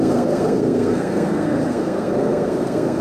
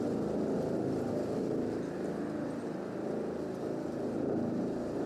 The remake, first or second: first